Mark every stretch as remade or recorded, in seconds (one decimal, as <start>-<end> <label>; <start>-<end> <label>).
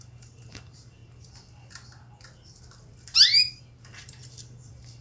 0.0-1.0 remade; 1.0-4.0 recorded; 4.0-5.0 remade